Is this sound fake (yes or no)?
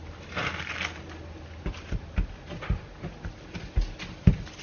no